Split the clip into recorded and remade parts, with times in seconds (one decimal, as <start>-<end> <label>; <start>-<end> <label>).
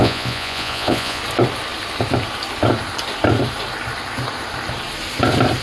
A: 0.0-1.2 remade; 1.2-5.6 recorded